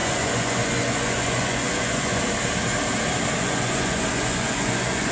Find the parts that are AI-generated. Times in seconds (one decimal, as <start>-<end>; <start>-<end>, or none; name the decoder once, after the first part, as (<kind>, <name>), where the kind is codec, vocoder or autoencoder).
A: 0.0-2.2 (vocoder, Vocos); 3.4-5.1